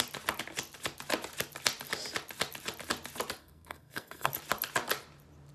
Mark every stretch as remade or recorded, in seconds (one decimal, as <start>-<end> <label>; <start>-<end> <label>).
0.0-3.4 recorded; 3.4-4.3 remade; 4.3-5.5 recorded